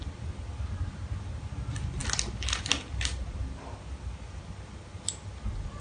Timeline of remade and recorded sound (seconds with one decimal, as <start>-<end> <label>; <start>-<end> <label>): 0.0-2.0 recorded; 2.0-3.4 remade; 3.4-5.8 recorded